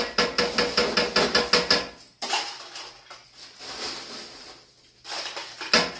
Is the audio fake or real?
real